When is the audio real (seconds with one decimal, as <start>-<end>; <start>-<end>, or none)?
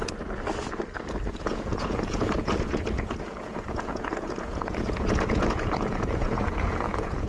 0.0-1.4